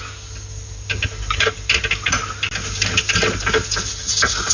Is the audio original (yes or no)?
yes